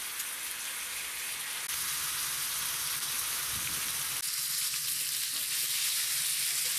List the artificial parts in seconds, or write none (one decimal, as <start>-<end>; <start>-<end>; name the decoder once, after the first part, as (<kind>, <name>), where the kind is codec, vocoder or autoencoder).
none

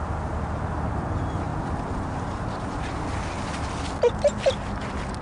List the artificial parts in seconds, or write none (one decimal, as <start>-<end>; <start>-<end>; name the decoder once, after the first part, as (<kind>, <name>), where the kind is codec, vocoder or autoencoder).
none